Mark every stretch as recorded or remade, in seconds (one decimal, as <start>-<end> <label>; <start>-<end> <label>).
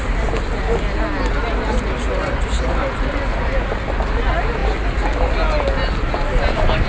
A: 0.0-6.9 recorded